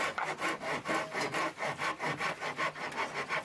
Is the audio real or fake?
real